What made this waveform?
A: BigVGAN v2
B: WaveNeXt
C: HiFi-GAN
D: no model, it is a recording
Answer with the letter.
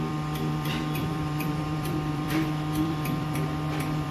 A